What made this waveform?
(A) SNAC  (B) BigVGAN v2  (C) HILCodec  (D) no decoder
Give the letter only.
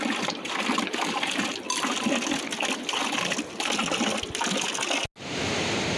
D